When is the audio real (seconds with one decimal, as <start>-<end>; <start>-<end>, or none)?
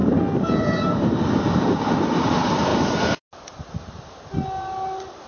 0.0-5.3